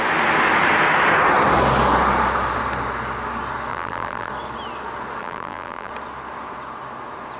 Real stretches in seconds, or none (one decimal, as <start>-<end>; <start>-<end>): 0.0-3.7; 4.3-5.2; 5.9-7.4